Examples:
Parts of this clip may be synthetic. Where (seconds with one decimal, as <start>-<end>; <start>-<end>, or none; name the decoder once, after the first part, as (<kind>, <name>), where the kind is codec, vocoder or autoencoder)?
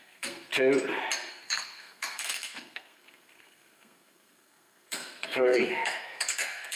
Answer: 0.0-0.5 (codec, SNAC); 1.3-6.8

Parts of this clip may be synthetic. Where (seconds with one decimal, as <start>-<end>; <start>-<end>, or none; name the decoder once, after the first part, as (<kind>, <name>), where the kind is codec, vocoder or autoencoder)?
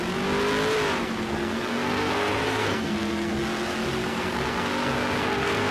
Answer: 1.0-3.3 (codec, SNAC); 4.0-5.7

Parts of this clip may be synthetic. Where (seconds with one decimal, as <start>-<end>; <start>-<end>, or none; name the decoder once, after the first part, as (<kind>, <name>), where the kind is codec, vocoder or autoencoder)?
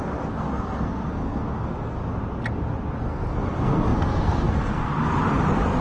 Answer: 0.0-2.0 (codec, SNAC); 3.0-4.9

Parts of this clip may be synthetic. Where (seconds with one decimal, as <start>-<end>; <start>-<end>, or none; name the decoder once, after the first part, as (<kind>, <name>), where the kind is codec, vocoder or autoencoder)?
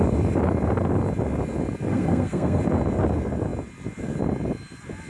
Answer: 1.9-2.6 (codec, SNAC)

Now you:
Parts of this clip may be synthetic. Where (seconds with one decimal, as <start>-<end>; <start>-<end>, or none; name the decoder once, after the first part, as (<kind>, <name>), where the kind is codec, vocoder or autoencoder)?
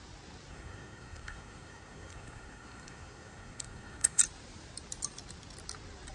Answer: 0.5-4.2 (codec, SNAC)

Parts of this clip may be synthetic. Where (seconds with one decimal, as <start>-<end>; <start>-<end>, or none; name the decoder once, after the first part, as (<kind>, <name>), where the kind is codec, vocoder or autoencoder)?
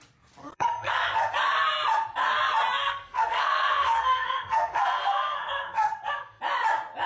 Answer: 0.4-1.3 (codec, SNAC); 2.8-6.4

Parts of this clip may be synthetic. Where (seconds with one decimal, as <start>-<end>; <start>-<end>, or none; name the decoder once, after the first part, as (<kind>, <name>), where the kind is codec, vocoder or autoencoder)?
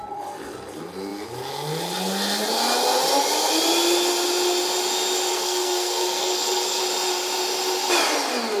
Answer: 5.3-6.8 (codec, SNAC)